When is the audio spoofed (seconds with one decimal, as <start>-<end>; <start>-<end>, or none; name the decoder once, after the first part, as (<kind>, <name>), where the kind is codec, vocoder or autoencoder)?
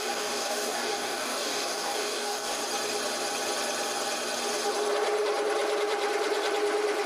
0.0-2.6 (codec, DAC)